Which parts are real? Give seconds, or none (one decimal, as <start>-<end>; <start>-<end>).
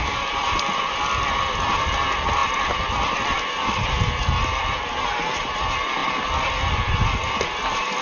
0.0-8.0